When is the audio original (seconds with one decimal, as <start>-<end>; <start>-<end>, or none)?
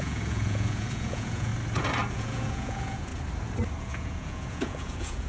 1.5-2.1; 3.1-3.8